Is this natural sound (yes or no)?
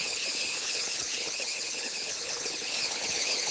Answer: no